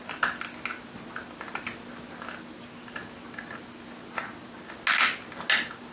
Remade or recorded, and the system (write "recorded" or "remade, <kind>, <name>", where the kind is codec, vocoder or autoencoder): recorded